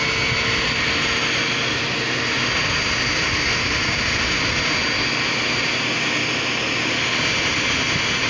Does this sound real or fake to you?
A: real